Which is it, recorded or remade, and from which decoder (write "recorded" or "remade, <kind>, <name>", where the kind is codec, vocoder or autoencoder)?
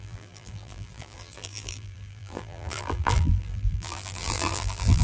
remade, vocoder, BigVGAN v2